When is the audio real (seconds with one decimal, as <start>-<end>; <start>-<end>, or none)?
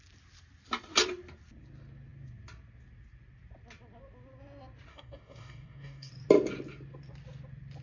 0.0-4.9; 6.1-7.8